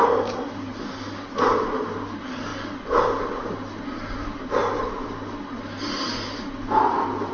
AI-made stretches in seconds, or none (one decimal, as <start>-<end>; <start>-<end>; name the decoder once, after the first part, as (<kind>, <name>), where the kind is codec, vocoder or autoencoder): none